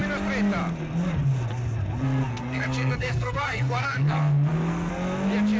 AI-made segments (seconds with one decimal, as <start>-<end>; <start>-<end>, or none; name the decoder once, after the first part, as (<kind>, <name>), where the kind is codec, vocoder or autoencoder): 2.3-4.9 (codec, SNAC)